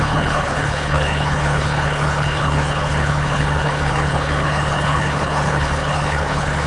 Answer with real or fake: fake